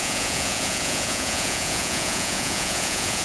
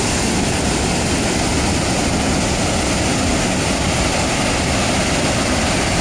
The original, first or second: second